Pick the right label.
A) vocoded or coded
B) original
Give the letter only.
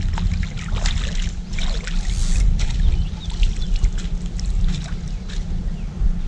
B